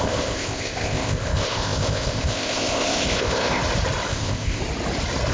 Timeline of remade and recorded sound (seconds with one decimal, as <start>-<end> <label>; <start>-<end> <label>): 0.0-3.6 remade; 3.6-4.1 recorded; 4.1-4.6 remade; 4.6-5.3 recorded